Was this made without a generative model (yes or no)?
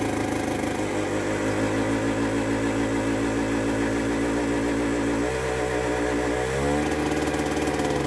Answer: yes